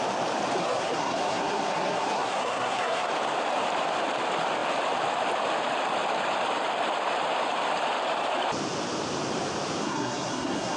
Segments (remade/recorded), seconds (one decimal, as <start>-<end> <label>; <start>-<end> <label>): 0.0-0.6 recorded; 0.6-3.1 remade; 3.1-9.8 recorded; 9.8-10.8 remade